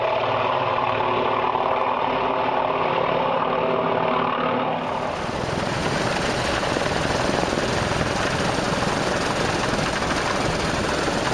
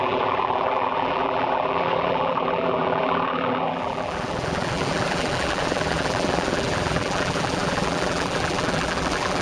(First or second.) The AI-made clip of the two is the second